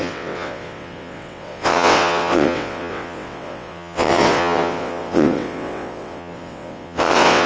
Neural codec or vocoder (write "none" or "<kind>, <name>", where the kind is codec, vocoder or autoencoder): vocoder, WaveNeXt